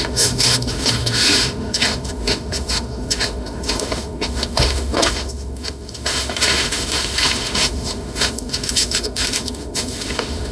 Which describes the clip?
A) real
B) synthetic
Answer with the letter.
B